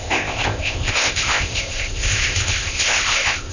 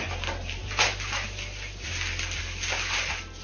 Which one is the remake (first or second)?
first